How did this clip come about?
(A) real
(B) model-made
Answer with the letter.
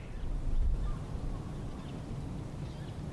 A